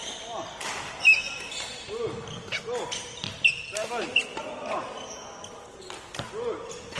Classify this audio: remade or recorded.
recorded